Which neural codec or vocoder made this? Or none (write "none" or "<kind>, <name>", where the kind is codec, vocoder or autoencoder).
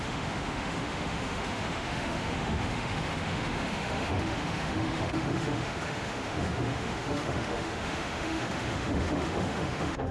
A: autoencoder, DAC-VAE